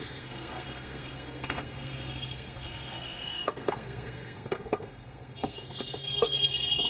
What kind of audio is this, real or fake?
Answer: fake